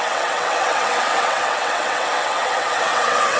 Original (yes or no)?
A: no